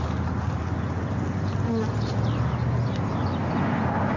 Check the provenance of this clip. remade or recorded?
recorded